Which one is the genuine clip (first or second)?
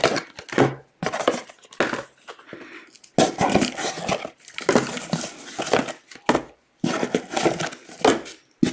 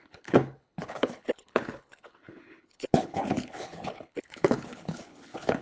first